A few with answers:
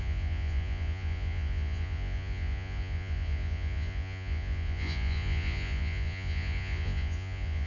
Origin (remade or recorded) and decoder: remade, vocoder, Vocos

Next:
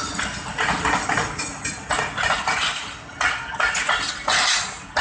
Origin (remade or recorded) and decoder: recorded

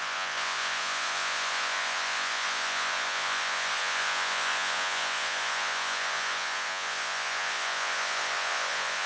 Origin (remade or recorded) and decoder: remade, vocoder, Vocos